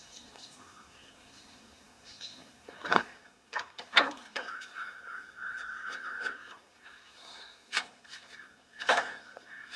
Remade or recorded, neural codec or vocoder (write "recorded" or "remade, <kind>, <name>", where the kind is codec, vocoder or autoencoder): remade, codec, SNAC